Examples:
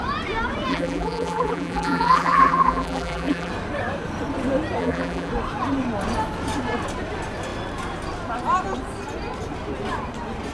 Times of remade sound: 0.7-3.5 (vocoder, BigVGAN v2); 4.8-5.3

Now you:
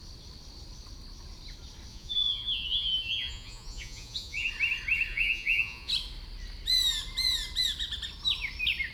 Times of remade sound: 1.9-4.5 (vocoder, Vocos); 5.1-5.9

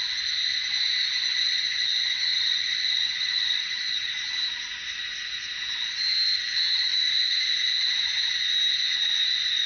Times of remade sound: 1.3-4.1 (vocoder, HiFi-GAN)

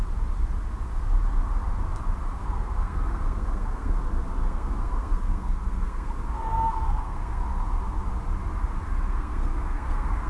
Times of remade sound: 2.4-4.0 (codec, SNAC); 4.4-7.4; 9.1-10.3

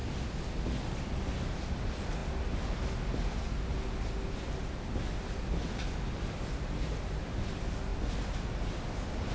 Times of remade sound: none

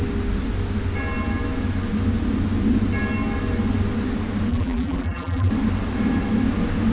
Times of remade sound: 4.5-5.5 (vocoder, BigVGAN v2)

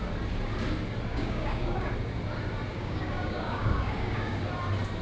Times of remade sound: 1.1-1.9 (codec, DAC); 2.7-4.4